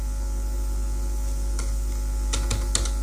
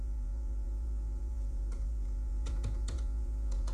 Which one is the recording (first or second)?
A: first